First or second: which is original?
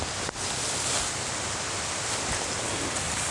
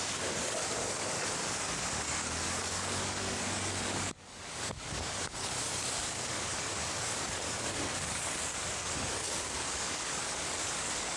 first